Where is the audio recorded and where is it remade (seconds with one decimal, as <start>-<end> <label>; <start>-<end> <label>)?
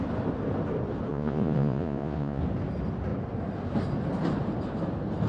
0.0-1.1 recorded; 1.1-2.4 remade; 2.4-5.3 recorded